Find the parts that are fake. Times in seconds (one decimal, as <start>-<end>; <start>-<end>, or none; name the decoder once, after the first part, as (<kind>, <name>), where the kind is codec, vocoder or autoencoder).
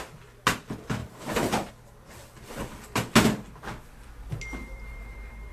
1.0-1.7 (vocoder, BigVGAN v2); 4.6-5.5